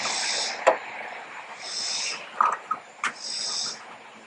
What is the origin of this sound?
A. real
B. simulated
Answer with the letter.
A